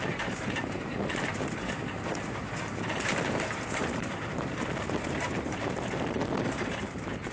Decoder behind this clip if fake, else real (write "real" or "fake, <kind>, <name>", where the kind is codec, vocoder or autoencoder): fake, vocoder, BigVGAN v2